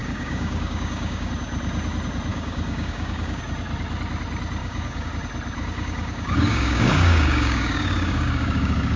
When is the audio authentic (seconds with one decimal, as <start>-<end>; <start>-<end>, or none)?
1.3-2.3; 3.4-4.6; 5.1-5.6